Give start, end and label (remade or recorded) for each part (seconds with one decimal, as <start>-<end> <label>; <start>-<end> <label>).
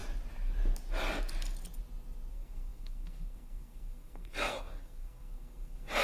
0.0-2.3 recorded; 2.3-6.0 remade